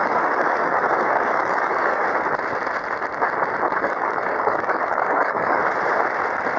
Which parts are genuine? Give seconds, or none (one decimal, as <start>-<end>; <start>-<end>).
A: 2.0-3.8; 5.6-6.6